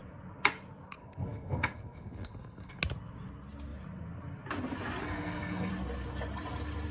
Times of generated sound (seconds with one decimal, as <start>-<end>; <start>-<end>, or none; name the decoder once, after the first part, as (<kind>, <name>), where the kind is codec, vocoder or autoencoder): 1.0-2.8 (codec, SNAC); 5.0-5.7